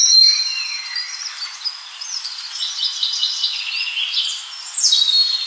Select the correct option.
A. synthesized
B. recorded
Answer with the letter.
B